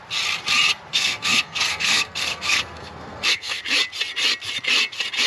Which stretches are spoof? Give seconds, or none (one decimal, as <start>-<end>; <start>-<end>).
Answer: 0.9-3.6